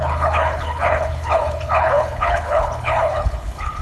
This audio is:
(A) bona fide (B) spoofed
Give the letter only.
B